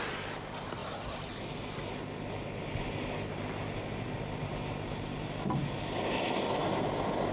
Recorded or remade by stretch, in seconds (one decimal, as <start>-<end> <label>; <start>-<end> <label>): 0.0-7.3 recorded